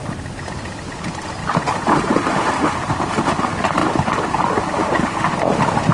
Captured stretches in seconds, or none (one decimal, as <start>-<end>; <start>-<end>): 0.0-1.4; 3.2-3.8; 4.8-5.9